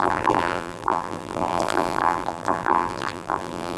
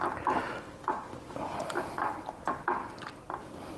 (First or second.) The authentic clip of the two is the second